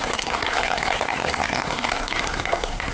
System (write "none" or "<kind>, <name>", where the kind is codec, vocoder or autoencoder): codec, SNAC